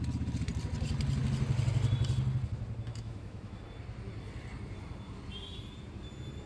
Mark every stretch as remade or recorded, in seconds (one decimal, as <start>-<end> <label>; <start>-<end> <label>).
0.0-2.9 recorded; 2.9-3.6 remade; 3.6-6.5 recorded